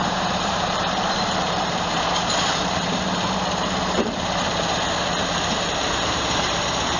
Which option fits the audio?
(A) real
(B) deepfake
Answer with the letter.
B